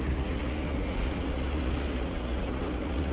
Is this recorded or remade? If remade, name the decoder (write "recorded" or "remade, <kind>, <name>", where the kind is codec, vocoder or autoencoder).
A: remade, vocoder, Vocos